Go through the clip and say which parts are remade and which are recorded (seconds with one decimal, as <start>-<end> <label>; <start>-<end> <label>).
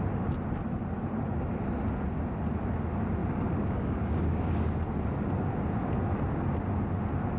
0.0-3.2 recorded; 3.2-4.4 remade; 4.4-7.4 recorded